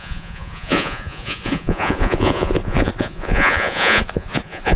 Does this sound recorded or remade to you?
remade